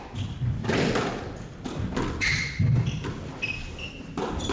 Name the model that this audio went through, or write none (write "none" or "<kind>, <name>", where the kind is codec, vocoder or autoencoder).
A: none